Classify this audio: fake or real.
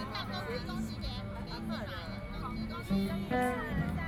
real